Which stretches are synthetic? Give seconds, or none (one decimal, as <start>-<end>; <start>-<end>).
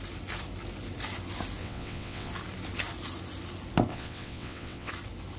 1.6-2.3; 3.9-4.9